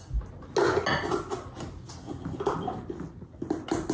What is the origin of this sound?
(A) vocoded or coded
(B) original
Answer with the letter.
B